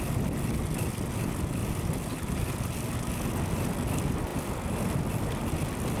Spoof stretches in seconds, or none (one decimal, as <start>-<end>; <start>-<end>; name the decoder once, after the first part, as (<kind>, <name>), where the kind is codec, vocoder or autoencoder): 1.6-2.4 (vocoder, BigVGAN v2)